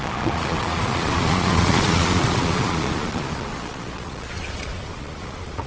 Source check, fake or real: fake